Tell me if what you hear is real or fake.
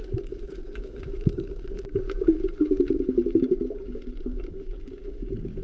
fake